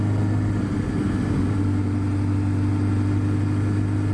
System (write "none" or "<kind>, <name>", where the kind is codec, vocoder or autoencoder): none